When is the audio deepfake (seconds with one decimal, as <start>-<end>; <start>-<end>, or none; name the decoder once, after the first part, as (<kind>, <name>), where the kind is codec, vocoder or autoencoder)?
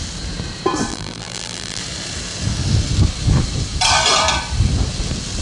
0.9-1.8 (vocoder, BigVGAN v2)